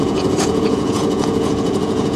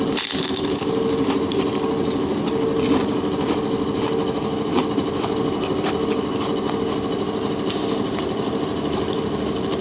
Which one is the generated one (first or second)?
first